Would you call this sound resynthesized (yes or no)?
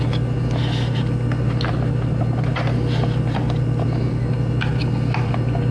no